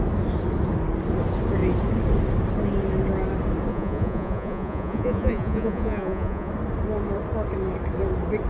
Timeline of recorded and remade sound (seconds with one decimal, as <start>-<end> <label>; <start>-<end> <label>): 0.0-3.7 recorded; 3.7-6.5 remade; 6.5-8.5 recorded